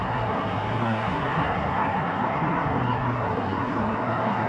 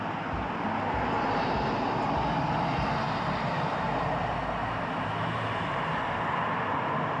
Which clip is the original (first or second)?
second